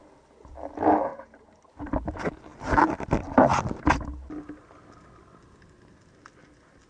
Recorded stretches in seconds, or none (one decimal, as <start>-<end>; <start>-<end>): 0.0-6.9